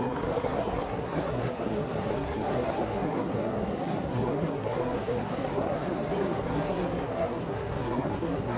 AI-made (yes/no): yes